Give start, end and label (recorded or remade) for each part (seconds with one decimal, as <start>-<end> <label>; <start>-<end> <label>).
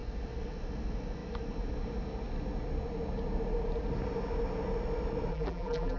0.0-5.3 recorded; 5.3-6.0 remade